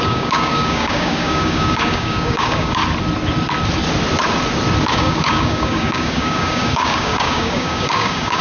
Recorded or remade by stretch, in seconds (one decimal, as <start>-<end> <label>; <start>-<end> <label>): 0.0-2.8 remade; 2.8-4.9 recorded; 4.9-8.4 remade